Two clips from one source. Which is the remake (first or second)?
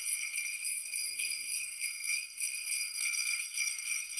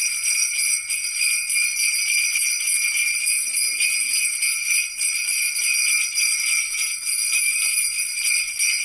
first